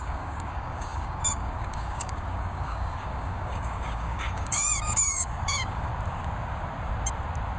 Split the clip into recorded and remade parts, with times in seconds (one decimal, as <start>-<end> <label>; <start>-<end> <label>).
0.0-5.9 remade; 5.9-7.6 recorded